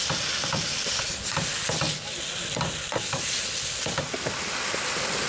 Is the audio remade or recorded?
recorded